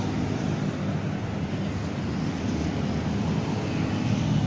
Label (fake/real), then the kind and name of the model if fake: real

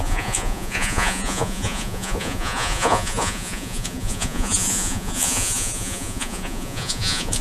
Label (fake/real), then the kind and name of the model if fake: fake, vocoder, Vocos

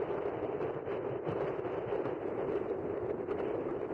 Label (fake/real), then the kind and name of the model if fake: real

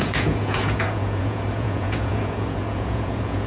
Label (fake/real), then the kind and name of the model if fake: fake, vocoder, Vocos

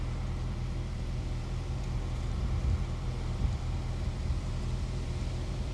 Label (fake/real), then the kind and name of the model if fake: fake, vocoder, BigVGAN v2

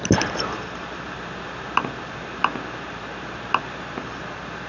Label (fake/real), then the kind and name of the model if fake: real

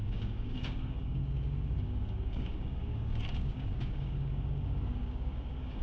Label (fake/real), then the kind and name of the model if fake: fake, codec, DAC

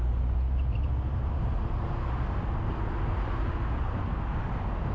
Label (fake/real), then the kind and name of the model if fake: real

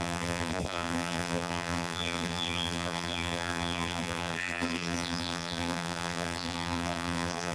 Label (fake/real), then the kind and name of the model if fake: fake, vocoder, BigVGAN v2